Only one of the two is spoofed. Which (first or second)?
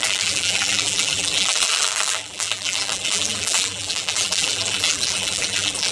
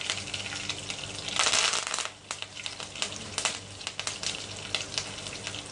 first